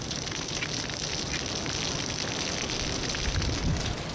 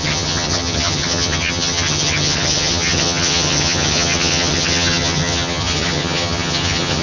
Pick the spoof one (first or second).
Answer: second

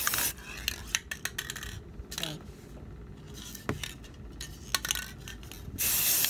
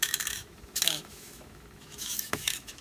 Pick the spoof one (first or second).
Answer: second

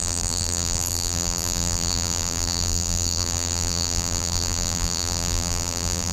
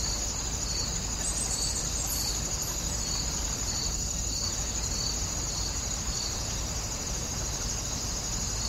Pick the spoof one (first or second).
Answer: first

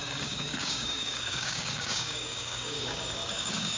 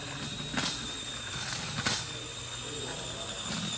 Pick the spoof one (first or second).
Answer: first